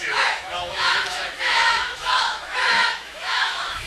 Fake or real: fake